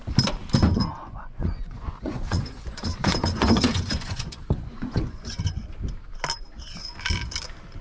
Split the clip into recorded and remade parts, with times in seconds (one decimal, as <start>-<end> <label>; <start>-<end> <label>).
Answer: 0.0-1.0 recorded; 1.0-5.6 remade; 5.6-7.8 recorded